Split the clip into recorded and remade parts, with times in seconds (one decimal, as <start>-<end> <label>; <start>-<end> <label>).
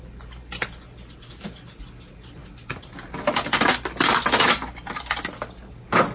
0.0-6.1 recorded